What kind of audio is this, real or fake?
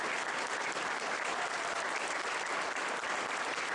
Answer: real